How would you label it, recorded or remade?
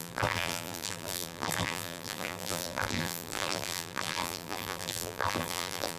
remade